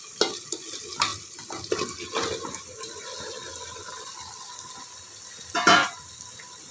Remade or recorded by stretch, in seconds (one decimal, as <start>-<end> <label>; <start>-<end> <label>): 0.0-6.7 recorded